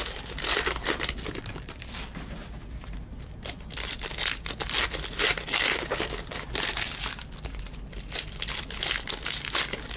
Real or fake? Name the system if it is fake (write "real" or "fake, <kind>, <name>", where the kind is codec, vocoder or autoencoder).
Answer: real